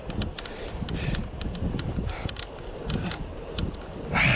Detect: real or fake real